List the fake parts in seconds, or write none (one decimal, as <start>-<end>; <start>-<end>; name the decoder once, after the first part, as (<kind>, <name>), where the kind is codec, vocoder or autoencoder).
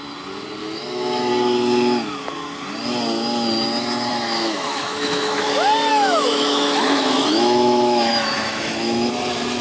0.6-1.3 (autoencoder, DAC-VAE); 4.1-5.4; 5.9-9.1